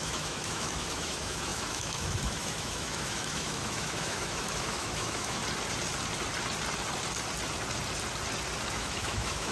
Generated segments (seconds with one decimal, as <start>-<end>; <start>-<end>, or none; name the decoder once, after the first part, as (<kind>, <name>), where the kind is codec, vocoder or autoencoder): 0.0-5.4 (autoencoder, DAC-VAE); 8.7-9.5